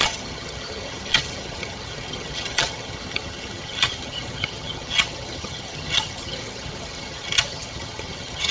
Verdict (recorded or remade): remade